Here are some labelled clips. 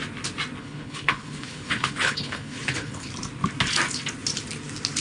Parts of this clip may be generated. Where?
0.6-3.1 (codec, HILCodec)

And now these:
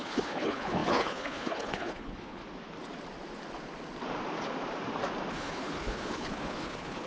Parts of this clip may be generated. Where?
0.0-2.4 (codec, HILCodec); 5.3-7.1